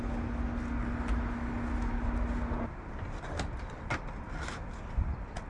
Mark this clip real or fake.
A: real